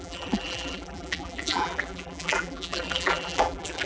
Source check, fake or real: fake